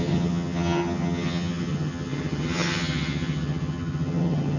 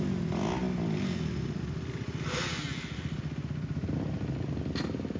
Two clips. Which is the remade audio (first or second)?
first